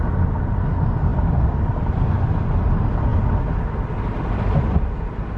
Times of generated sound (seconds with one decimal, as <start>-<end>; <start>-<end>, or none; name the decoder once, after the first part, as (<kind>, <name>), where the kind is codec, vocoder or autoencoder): none